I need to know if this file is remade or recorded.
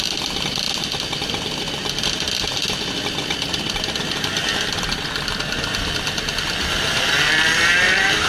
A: recorded